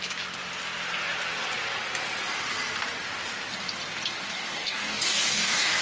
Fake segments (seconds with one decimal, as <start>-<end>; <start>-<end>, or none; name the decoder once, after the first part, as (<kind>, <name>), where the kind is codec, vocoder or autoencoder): 4.5-5.8 (codec, DAC)